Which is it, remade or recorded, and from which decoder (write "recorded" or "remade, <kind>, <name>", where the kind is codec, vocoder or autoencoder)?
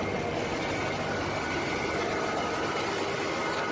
recorded